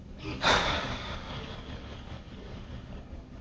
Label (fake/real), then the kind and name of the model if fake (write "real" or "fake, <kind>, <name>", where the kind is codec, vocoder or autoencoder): fake, codec, DAC